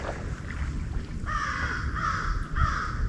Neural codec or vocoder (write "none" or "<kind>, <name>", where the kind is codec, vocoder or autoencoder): none